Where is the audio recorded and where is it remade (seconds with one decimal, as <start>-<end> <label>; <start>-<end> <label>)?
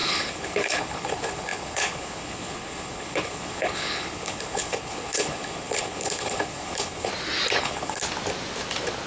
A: 0.0-7.1 remade; 7.1-7.6 recorded; 7.6-8.0 remade; 8.0-9.1 recorded